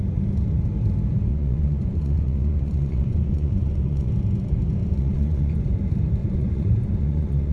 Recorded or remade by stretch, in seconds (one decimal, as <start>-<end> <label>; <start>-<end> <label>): 0.0-1.3 recorded; 1.3-4.1 remade; 4.1-4.8 recorded; 4.8-5.6 remade; 5.6-6.2 recorded; 6.2-7.5 remade